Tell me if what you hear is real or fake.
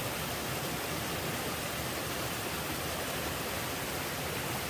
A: real